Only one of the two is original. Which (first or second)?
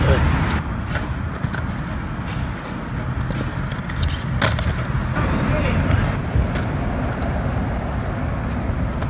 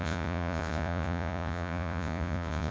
first